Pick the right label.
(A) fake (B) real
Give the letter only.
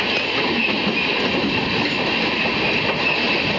B